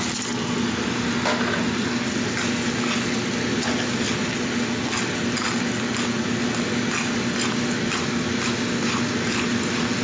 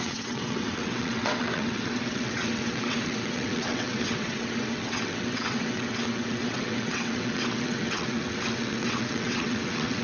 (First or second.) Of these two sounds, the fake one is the second